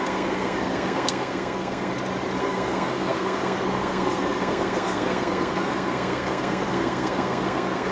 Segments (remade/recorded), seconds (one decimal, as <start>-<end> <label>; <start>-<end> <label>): 0.0-1.9 remade; 1.9-2.4 recorded; 2.4-7.9 remade